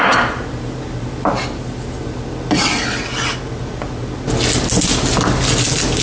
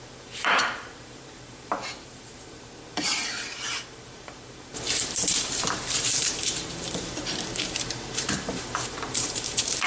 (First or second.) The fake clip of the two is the second